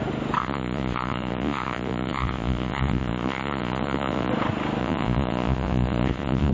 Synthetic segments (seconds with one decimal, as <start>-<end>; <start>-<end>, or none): 0.4-4.3; 4.8-6.5